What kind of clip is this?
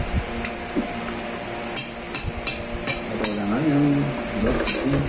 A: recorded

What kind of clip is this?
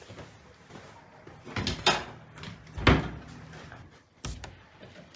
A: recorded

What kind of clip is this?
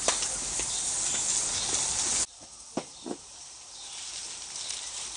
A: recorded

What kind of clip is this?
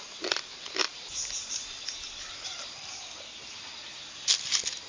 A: recorded